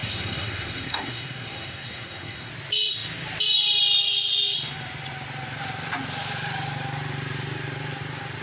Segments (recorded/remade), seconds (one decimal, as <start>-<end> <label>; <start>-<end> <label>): 0.0-2.5 remade; 2.5-8.4 recorded